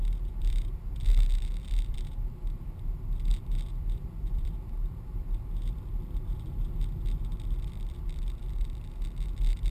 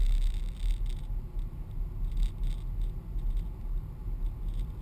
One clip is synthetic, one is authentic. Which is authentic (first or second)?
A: second